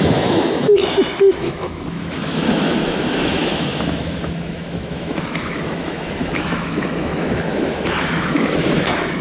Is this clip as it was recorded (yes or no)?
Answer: no